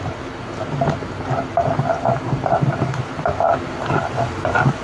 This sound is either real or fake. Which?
real